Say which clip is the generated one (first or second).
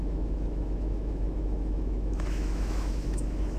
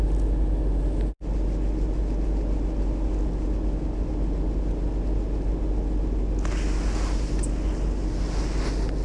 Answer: first